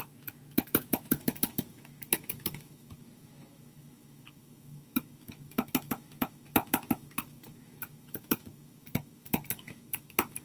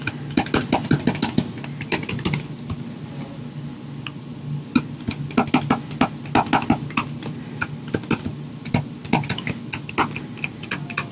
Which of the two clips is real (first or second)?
second